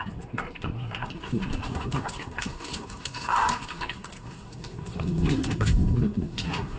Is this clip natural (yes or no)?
no